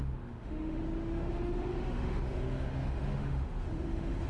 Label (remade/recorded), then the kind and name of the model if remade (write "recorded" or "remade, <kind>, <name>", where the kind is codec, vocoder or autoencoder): remade, autoencoder, DAC-VAE